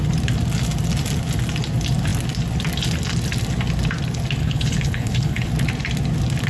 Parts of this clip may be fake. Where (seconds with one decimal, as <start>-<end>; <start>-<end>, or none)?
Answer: 4.4-5.5